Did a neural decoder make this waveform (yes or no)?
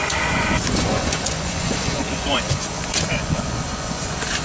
yes